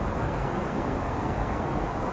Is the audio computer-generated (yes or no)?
yes